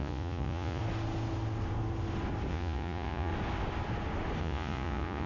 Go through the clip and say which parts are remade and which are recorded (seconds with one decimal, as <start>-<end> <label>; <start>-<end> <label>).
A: 0.0-0.8 remade; 0.8-2.5 recorded; 2.5-3.3 remade; 3.3-4.4 recorded; 4.4-5.3 remade